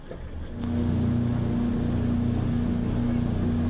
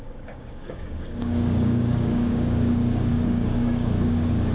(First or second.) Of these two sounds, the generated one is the second